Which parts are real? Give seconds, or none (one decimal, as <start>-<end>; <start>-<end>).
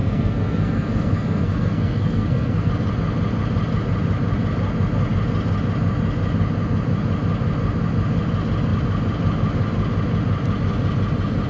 2.7-11.5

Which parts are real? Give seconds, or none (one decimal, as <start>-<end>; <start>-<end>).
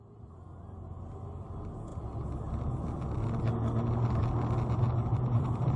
0.0-5.1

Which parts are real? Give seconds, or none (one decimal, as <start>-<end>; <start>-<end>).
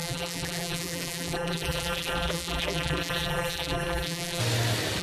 4.4-5.0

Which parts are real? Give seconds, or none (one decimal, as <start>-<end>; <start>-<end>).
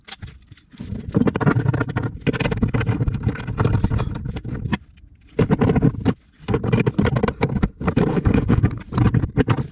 0.0-8.1; 8.6-9.7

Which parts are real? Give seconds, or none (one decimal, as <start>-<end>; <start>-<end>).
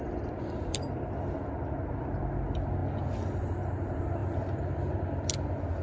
0.0-5.8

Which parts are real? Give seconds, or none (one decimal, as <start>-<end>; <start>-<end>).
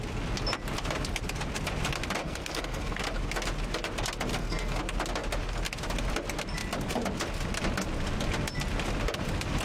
0.0-2.2; 3.0-4.3; 4.8-9.6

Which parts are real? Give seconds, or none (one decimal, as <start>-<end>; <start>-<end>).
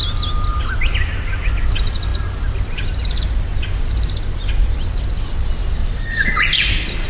0.0-5.8; 6.3-7.1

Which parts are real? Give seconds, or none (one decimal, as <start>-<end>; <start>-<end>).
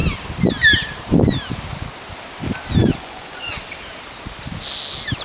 0.0-2.8; 3.5-5.2